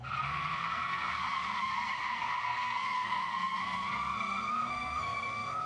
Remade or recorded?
remade